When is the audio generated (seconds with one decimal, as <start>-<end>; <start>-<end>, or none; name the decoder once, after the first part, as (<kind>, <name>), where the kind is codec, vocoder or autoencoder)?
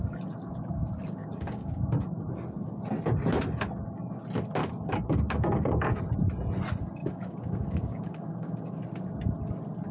1.2-2.3 (codec, DAC); 4.6-6.0; 7.0-8.8